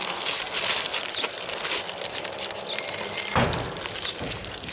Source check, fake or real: real